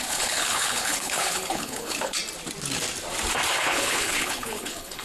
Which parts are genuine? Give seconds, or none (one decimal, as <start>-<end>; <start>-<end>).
2.2-3.6